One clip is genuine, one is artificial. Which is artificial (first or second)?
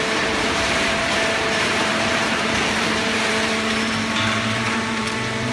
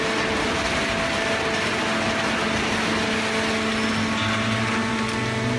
first